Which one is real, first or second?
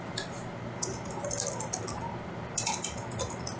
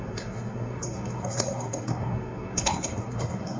first